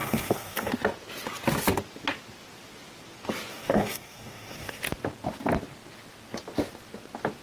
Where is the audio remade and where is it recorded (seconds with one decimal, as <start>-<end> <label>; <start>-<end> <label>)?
0.0-0.7 remade; 0.7-3.5 recorded; 3.5-4.8 remade; 4.8-7.4 recorded